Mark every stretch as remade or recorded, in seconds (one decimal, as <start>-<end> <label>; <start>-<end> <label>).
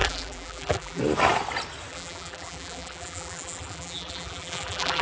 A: 0.0-1.0 remade; 1.0-1.9 recorded; 1.9-5.0 remade